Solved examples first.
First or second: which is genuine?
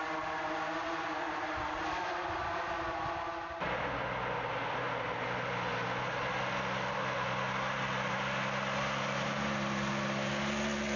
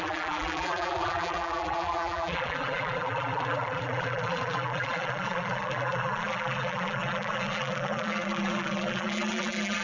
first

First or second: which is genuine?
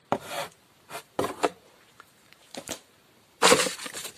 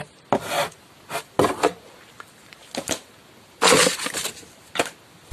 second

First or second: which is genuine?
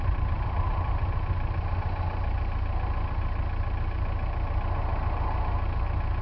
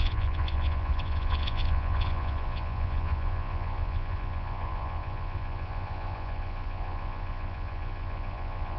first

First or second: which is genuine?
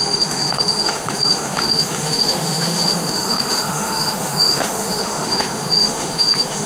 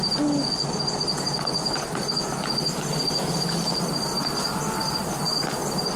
second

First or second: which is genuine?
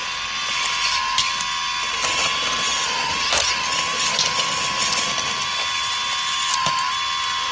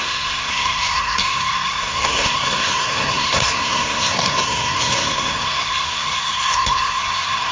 first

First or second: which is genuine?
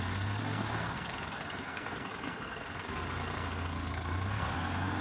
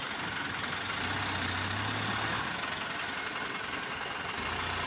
second